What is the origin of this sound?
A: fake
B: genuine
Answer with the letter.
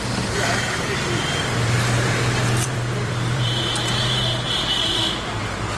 A